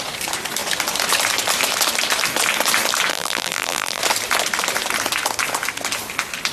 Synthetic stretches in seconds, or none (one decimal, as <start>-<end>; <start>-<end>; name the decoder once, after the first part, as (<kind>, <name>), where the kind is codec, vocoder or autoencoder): 3.1-4.0 (vocoder, BigVGAN v2)